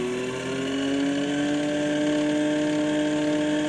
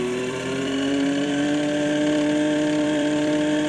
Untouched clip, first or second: first